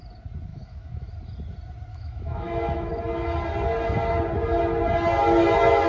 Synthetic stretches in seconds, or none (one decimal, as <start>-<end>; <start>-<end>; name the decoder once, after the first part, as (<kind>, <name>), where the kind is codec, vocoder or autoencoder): 0.5-1.1 (autoencoder, DAC-VAE); 1.9-2.9